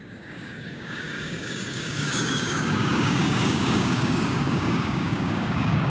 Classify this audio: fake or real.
fake